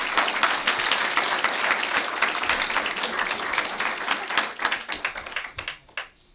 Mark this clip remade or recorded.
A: recorded